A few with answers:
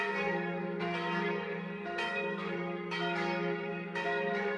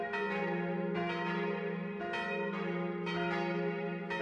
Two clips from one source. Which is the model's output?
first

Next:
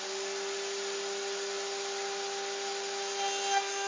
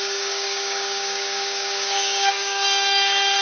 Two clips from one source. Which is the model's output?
second